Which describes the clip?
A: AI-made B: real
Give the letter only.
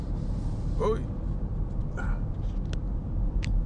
B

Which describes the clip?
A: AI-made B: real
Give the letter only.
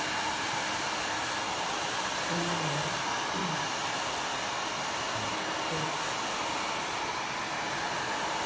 B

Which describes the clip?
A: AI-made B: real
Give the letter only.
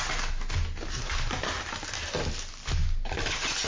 B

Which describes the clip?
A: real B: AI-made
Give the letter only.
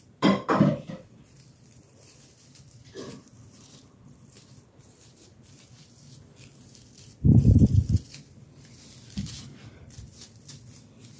B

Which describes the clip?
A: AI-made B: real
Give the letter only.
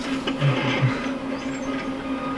B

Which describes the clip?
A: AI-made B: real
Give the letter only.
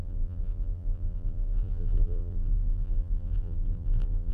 A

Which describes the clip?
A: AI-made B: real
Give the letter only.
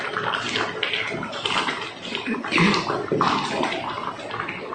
B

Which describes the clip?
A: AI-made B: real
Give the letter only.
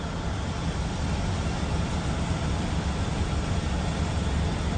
B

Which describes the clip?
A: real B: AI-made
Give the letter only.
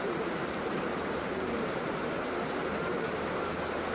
B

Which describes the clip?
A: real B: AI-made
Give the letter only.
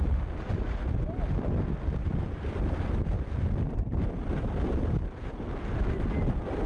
B